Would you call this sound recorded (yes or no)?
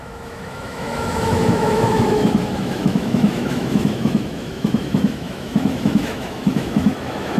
no